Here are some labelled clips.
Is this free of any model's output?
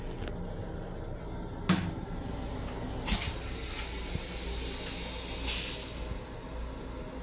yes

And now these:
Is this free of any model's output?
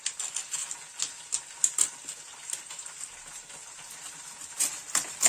yes